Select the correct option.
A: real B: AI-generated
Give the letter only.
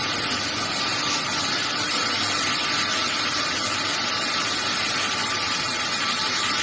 B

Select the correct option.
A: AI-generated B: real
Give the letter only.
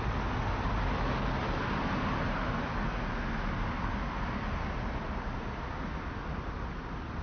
B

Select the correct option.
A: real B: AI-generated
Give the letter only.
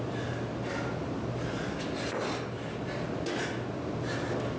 A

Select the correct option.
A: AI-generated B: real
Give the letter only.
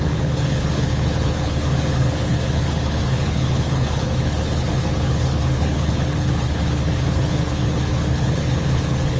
A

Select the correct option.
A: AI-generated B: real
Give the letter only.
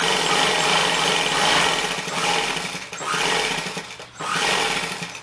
B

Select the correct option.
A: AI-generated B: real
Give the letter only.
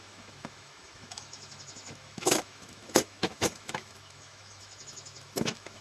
A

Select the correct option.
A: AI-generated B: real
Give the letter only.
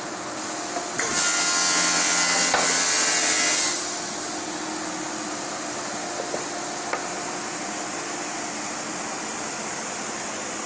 B